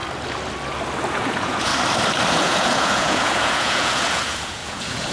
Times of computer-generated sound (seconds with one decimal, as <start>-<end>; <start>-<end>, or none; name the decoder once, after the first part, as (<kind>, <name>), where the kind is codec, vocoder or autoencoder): 1.1-1.7 (vocoder, Vocos); 2.3-5.1